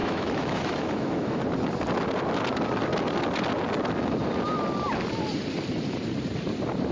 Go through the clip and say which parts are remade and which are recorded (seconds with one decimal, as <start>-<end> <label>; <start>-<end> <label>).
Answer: 0.0-1.4 remade; 1.4-6.9 recorded